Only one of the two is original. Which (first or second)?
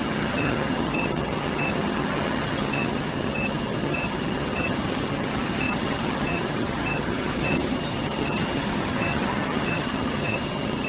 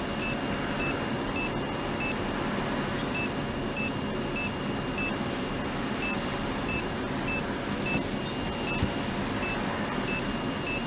second